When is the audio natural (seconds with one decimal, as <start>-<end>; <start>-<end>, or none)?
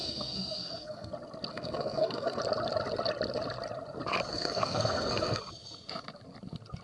1.1-1.5; 2.4-4.3; 5.4-6.8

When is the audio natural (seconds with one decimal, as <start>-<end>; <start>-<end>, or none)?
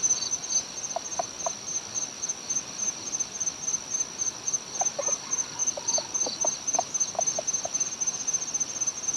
0.0-9.2